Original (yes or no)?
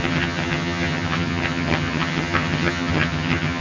no